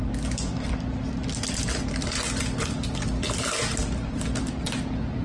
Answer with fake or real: real